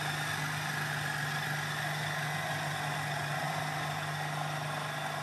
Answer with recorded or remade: recorded